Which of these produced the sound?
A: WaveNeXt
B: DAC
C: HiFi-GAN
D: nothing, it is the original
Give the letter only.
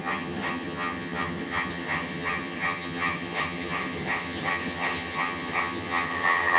C